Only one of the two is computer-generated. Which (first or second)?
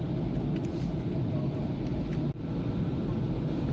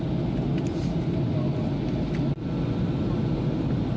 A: first